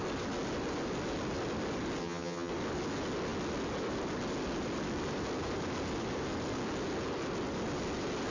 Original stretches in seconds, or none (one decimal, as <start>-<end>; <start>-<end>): 0.0-2.0; 2.5-8.3